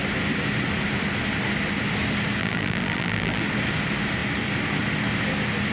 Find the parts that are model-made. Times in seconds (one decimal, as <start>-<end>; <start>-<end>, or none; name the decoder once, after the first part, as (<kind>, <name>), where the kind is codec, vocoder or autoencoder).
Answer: 2.4-3.4 (vocoder, BigVGAN v2)